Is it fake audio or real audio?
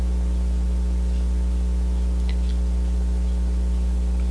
real